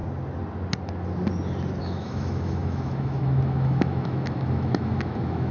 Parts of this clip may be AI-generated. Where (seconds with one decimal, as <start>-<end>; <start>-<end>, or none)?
1.8-5.5